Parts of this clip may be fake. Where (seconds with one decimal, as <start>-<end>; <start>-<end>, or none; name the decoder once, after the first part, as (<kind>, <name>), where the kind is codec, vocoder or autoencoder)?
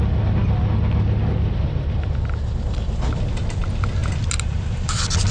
none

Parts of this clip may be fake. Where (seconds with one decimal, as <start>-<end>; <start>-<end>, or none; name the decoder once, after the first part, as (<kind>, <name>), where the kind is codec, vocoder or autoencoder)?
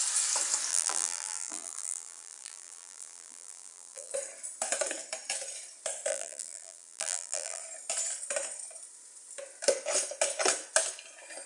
0.7-4.1 (vocoder, BigVGAN v2); 6.1-7.6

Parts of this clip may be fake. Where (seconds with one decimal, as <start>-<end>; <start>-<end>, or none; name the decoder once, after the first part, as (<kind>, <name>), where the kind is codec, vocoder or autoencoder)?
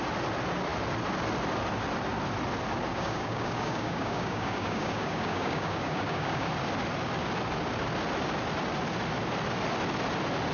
2.9-6.5 (codec, DAC)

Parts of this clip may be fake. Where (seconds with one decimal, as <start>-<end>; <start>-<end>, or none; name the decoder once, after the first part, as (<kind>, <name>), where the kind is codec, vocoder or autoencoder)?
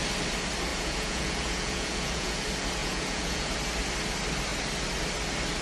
0.7-2.4 (vocoder, Vocos); 2.8-3.5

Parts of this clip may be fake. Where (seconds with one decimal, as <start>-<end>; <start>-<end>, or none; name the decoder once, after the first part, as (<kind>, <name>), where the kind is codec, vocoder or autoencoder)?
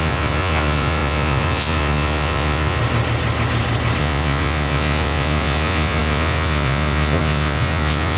0.0-2.8 (vocoder, Vocos); 4.0-8.2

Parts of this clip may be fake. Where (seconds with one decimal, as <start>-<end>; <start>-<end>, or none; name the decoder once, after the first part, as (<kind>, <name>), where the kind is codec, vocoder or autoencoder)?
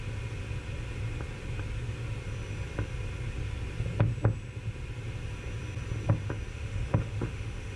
6.5-7.8 (autoencoder, DAC-VAE)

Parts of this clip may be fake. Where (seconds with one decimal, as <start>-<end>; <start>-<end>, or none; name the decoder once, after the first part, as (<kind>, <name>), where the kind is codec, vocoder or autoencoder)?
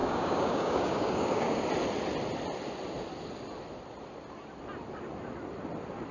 0.0-1.6 (codec, DAC)